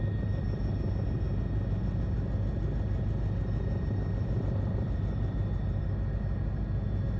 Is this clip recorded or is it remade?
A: recorded